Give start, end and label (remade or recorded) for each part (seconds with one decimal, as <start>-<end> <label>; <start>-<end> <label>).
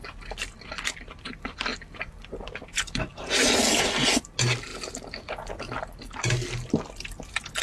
0.0-1.7 recorded; 1.7-3.7 remade; 3.7-7.6 recorded